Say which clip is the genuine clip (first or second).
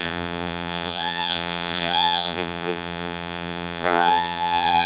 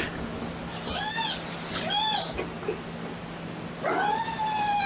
second